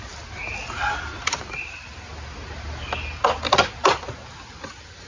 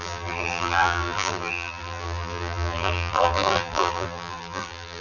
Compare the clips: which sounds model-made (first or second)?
second